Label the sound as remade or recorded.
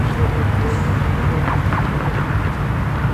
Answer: recorded